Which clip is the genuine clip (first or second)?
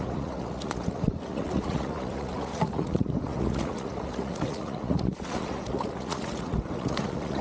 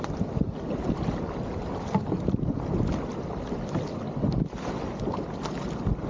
second